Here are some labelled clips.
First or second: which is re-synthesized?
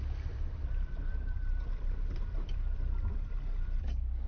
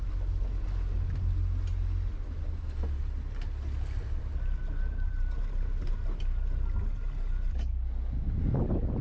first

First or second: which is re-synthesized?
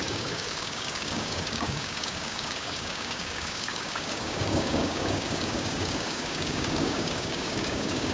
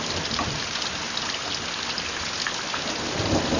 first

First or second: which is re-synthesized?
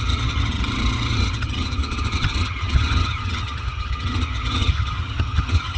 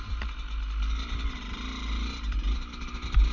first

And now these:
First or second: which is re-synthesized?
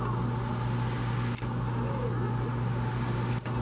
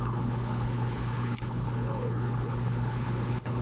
second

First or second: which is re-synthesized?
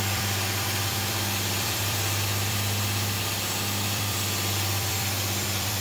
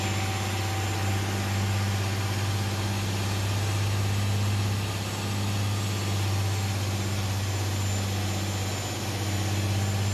first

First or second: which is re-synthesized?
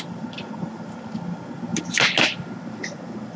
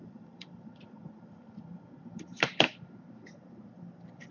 second